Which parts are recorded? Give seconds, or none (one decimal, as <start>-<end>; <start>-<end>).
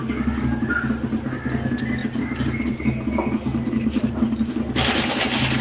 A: 0.0-5.6